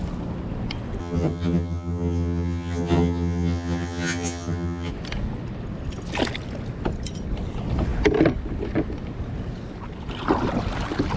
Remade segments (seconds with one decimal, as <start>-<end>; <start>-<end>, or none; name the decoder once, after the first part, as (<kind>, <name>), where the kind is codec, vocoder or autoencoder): 1.0-4.9 (vocoder, HiFi-GAN)